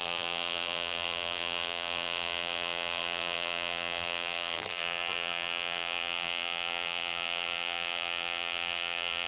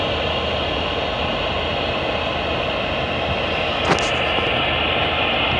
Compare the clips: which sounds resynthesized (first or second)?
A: first